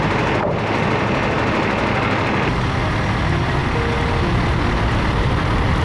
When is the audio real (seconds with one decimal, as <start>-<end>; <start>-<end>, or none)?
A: 0.0-5.8